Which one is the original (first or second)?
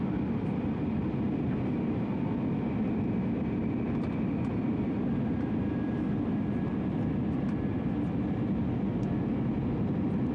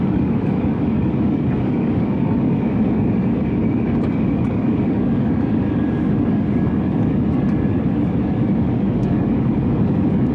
first